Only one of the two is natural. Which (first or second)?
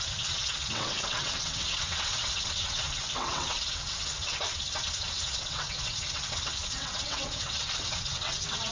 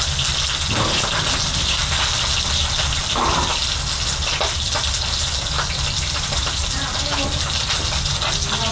second